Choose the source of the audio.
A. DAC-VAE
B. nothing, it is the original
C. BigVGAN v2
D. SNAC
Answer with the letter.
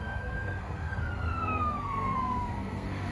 D